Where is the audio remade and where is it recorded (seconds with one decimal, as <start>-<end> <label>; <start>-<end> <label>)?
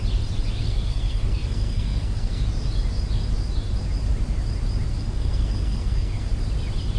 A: 0.0-0.6 recorded; 0.6-2.4 remade; 2.4-4.9 recorded; 4.9-6.3 remade; 6.3-7.0 recorded